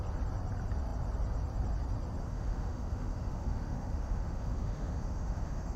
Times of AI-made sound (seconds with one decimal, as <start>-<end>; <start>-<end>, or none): 2.2-5.8